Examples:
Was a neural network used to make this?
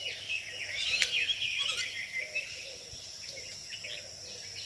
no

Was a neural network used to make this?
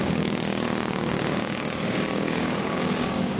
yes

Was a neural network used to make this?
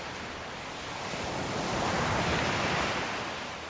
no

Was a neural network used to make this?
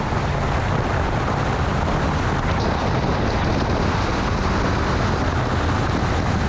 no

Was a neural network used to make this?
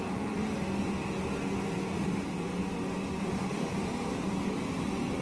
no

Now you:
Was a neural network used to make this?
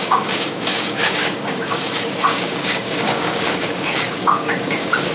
yes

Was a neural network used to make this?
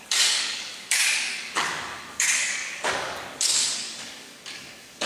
yes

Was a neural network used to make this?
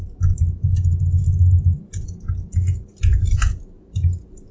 no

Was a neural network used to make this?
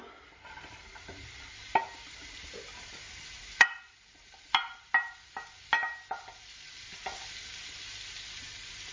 no